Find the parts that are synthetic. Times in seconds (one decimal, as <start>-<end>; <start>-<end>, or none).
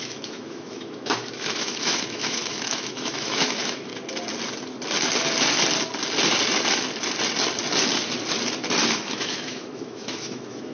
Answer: 0.0-3.9; 8.9-10.7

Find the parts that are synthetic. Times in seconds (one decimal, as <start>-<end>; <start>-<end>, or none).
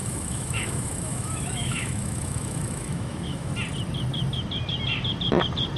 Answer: 0.0-3.5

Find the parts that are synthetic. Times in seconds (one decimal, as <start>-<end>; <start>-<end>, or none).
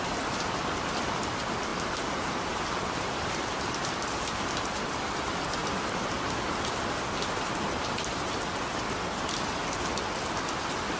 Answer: none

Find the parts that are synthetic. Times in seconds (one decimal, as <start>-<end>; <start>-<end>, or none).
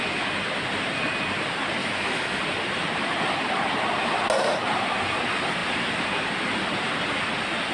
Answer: 1.8-2.4